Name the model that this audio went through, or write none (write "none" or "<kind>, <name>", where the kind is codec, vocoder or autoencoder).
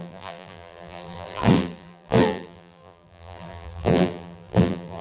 vocoder, BigVGAN v2